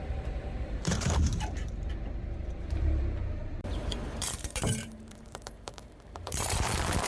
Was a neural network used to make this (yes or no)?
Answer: yes